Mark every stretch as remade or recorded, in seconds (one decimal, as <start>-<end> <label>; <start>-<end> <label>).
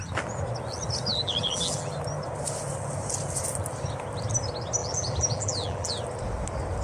0.0-1.1 recorded; 1.1-1.9 remade; 1.9-4.8 recorded; 4.8-5.9 remade; 5.9-6.8 recorded